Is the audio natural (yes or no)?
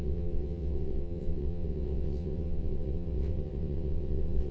no